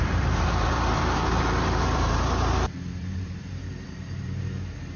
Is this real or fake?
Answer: fake